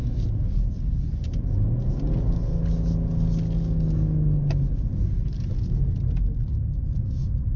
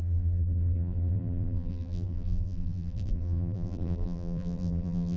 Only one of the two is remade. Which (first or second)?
second